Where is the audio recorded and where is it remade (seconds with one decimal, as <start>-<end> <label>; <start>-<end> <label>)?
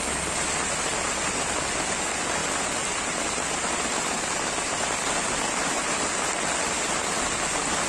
0.0-7.9 recorded